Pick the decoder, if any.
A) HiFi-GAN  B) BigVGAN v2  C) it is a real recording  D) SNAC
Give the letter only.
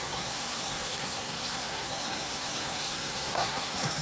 D